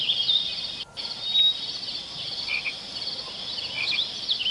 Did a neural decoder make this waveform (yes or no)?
no